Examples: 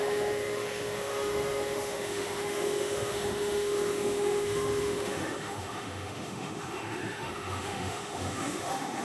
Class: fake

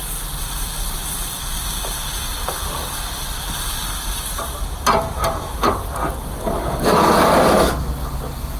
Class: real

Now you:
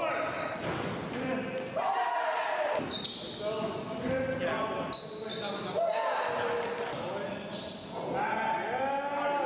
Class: real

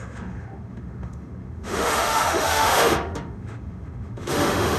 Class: fake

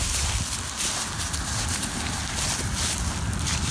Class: real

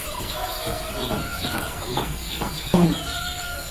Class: fake